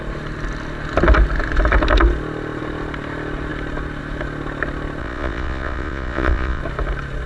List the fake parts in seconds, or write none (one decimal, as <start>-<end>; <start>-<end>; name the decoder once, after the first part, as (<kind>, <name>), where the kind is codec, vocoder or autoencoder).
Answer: 5.0-6.6 (vocoder, Vocos)